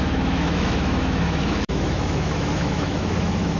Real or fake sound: fake